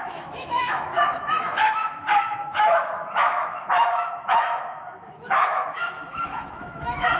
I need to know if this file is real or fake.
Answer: fake